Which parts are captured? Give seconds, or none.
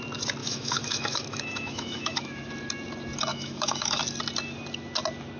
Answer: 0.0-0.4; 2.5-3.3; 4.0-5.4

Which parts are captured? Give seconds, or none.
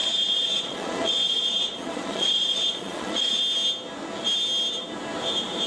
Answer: 3.4-5.7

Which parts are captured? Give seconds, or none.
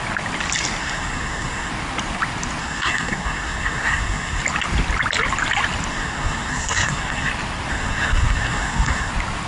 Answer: 0.0-0.8; 1.7-2.6; 4.4-5.9; 7.3-7.7; 9.1-9.5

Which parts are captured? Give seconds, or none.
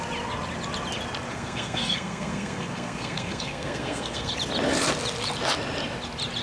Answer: 0.0-1.3; 4.3-6.4